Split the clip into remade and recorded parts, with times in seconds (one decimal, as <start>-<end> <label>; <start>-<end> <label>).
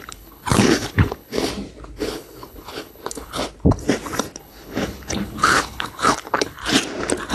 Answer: 0.0-1.5 remade; 1.5-2.0 recorded; 2.0-3.4 remade; 3.4-4.4 recorded; 4.4-6.6 remade; 6.6-7.3 recorded